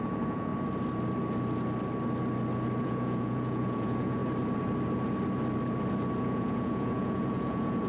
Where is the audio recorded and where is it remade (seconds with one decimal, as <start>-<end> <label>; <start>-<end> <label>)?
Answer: 0.0-0.5 remade; 0.5-2.8 recorded; 2.8-4.2 remade; 4.2-6.2 recorded; 6.2-7.9 remade